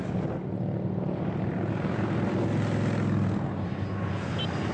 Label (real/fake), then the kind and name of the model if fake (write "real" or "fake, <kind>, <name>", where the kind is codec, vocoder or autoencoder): real